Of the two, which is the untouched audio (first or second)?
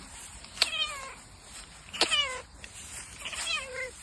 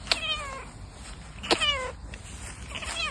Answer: second